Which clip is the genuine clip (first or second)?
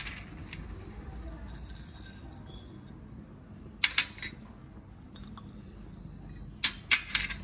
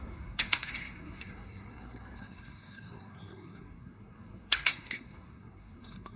first